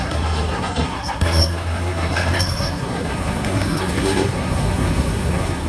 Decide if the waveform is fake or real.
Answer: fake